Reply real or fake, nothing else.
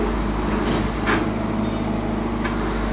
real